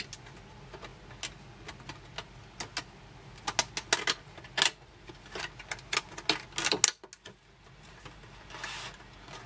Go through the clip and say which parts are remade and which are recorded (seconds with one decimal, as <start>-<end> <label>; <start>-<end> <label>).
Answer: 0.0-9.5 recorded